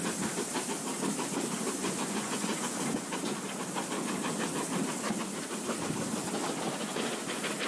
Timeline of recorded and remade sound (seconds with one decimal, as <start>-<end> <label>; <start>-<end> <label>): 0.0-1.8 recorded; 1.8-2.5 remade; 2.5-7.7 recorded